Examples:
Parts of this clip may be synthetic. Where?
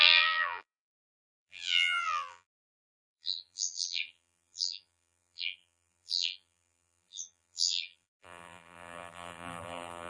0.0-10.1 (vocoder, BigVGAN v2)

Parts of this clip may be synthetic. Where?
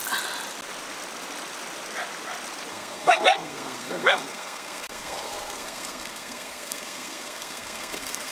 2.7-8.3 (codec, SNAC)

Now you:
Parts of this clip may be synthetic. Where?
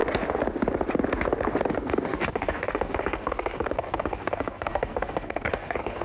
1.7-6.0 (codec, SNAC)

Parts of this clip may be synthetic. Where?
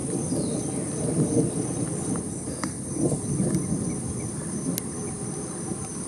none